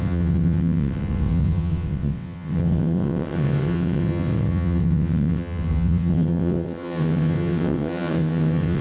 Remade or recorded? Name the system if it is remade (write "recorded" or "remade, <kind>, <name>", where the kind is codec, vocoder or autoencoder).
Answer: remade, vocoder, WaveNeXt